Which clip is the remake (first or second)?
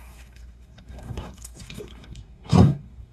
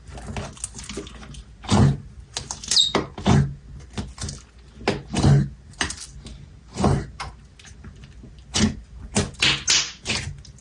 first